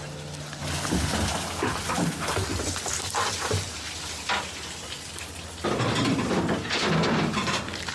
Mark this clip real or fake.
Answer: real